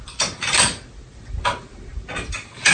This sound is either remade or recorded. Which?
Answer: recorded